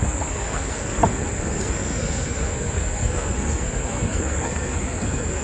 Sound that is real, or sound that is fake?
fake